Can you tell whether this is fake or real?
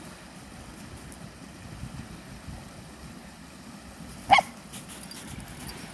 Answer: real